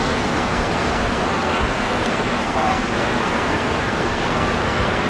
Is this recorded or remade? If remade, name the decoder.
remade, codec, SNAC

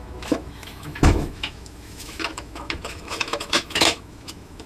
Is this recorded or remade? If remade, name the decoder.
remade, autoencoder, DAC-VAE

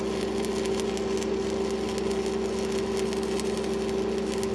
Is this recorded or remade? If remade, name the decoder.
recorded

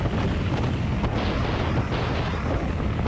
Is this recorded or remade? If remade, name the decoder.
recorded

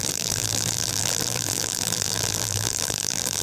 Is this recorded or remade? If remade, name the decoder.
remade, vocoder, BigVGAN v2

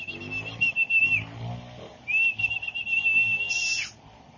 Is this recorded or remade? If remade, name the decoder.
recorded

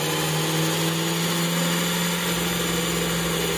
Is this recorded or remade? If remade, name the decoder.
recorded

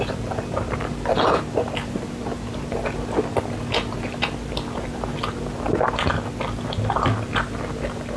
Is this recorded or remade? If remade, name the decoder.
recorded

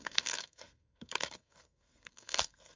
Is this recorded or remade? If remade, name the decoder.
remade, codec, SNAC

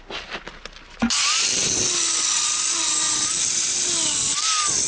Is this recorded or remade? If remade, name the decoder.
recorded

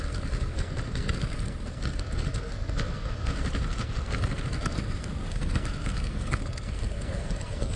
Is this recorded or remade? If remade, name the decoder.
remade, codec, SNAC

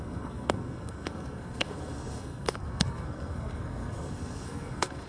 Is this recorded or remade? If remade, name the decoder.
remade, codec, SNAC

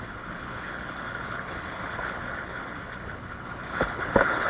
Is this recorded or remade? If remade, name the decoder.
remade, codec, HILCodec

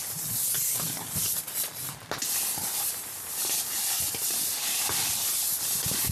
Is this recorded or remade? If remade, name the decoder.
recorded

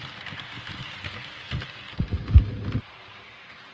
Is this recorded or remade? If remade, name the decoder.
recorded